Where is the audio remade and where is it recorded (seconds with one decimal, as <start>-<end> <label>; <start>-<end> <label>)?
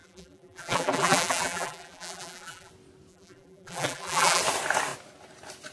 0.0-2.7 remade; 2.7-3.1 recorded; 3.1-4.4 remade; 4.4-5.7 recorded